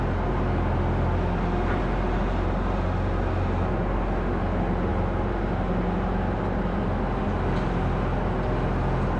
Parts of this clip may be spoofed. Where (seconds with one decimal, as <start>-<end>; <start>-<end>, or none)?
none